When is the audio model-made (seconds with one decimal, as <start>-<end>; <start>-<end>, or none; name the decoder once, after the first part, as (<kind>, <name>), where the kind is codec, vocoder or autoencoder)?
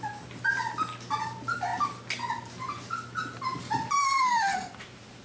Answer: 4.0-4.7 (codec, SNAC)